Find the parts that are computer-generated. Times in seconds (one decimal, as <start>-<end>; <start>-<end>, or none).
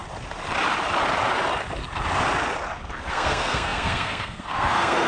3.1-5.1